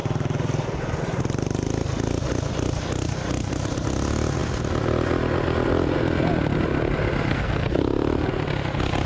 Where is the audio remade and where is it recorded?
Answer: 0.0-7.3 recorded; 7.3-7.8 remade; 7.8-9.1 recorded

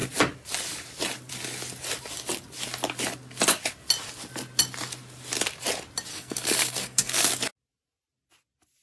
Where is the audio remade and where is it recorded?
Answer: 0.0-6.1 recorded; 6.1-7.3 remade; 7.3-8.8 recorded

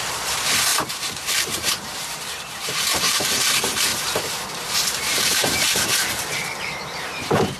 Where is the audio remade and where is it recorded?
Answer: 0.0-3.9 remade; 3.9-4.5 recorded; 4.5-7.6 remade